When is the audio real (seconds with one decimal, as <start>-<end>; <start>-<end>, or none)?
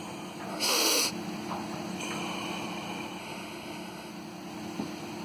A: 0.0-0.5; 1.1-3.2; 4.1-5.2